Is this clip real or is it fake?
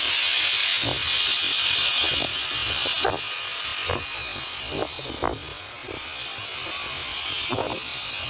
real